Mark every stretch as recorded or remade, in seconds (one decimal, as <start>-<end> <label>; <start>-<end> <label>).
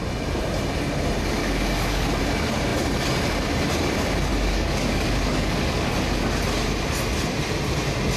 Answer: 0.0-1.4 recorded; 1.4-2.2 remade; 2.2-4.3 recorded; 4.3-5.9 remade; 5.9-8.2 recorded